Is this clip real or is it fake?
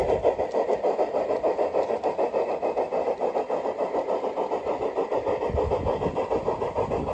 real